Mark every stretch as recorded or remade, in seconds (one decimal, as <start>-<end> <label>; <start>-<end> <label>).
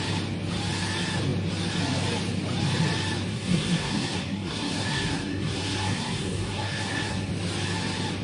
0.0-3.3 recorded; 3.3-7.3 remade; 7.3-8.2 recorded